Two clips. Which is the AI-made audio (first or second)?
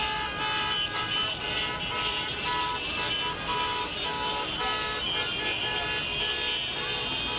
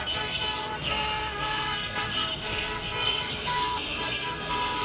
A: second